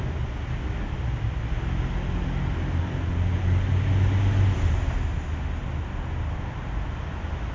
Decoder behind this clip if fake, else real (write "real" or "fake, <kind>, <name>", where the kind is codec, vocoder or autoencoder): real